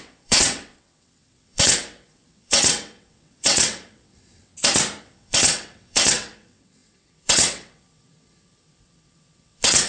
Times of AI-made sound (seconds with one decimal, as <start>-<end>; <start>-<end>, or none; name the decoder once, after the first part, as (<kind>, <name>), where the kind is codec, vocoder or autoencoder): 0.0-4.5 (vocoder, WaveNeXt); 5.0-9.9